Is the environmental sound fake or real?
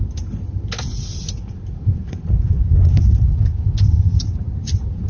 real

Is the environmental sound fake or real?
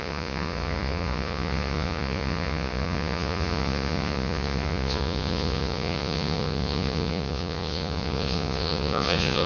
fake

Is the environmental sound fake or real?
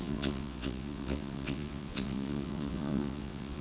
fake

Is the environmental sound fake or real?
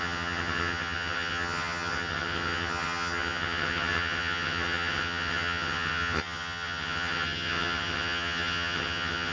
fake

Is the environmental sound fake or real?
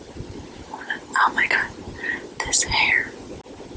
real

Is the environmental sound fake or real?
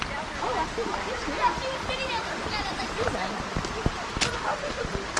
real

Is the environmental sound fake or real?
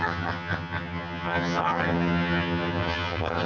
fake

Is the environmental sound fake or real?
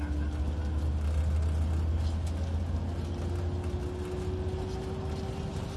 real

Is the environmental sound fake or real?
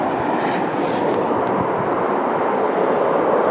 real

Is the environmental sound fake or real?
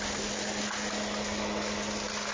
real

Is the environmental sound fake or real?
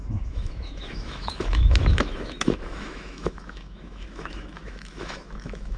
fake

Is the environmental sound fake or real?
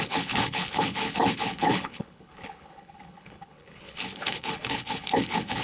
fake